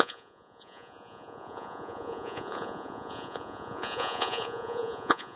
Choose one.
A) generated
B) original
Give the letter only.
A